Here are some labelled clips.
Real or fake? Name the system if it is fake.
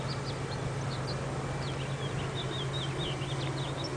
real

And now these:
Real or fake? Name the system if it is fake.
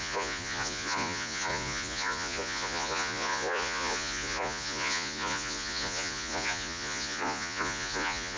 fake, vocoder, Vocos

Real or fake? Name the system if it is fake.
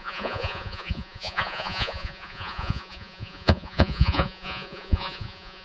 fake, vocoder, Vocos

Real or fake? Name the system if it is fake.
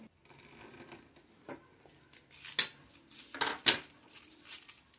real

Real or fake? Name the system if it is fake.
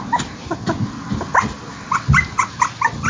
real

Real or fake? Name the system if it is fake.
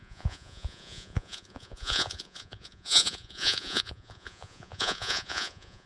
fake, vocoder, Vocos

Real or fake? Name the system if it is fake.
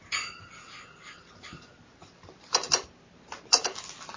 real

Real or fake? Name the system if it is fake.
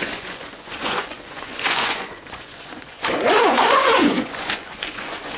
fake, vocoder, Vocos